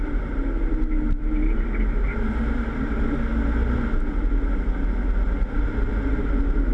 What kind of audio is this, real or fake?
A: real